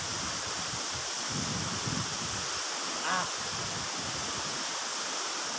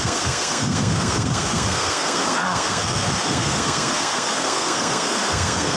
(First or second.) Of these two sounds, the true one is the first